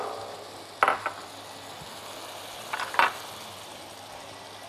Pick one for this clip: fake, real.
real